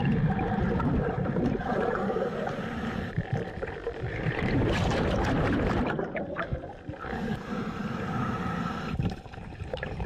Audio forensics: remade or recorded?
remade